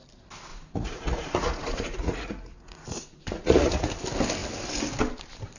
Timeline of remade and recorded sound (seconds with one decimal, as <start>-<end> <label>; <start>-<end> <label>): 0.0-0.5 recorded; 0.5-3.9 remade; 3.9-5.6 recorded